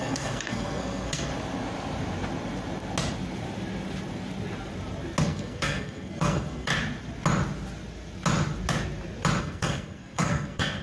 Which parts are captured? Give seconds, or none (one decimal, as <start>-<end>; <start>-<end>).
1.3-5.2; 6.7-9.4